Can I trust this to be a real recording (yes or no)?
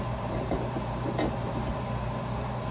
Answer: no